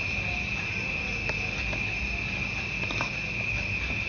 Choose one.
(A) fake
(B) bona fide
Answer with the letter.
B